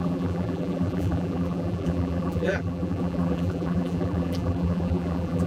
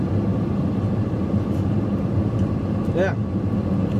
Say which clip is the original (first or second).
second